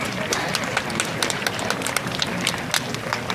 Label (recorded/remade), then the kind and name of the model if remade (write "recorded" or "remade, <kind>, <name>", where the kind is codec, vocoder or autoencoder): recorded